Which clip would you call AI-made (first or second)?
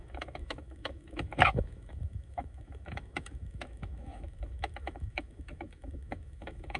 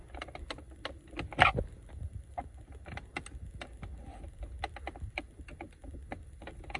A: first